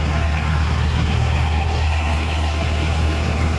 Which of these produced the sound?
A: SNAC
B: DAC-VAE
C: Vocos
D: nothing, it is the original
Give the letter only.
A